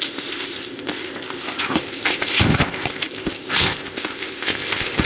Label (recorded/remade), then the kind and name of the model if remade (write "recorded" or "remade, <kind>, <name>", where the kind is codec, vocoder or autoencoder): remade, codec, ZipCodec